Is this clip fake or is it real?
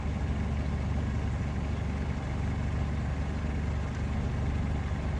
real